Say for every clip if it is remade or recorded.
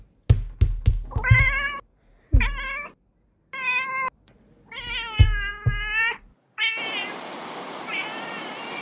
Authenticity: recorded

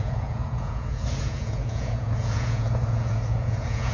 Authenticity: remade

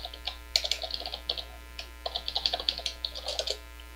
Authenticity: recorded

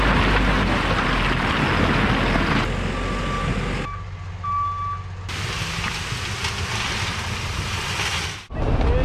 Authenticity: recorded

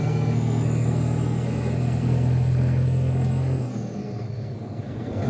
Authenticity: remade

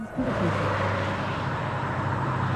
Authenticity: recorded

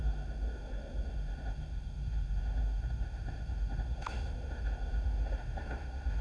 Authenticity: remade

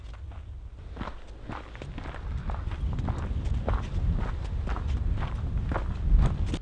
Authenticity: recorded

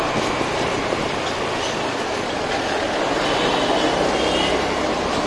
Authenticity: recorded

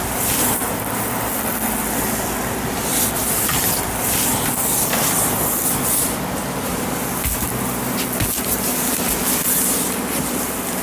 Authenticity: recorded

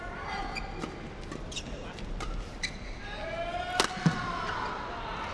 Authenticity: recorded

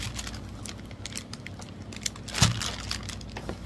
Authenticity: recorded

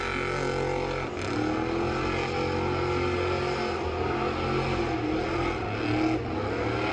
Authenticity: recorded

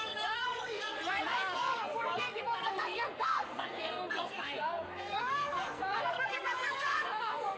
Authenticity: remade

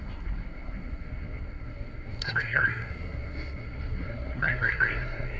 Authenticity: remade